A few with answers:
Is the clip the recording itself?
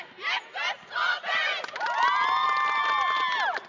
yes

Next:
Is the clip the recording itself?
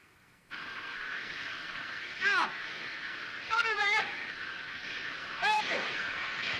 no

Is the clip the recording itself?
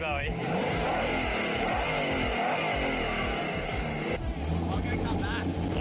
yes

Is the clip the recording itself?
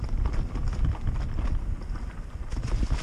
yes